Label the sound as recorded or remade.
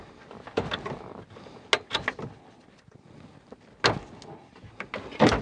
recorded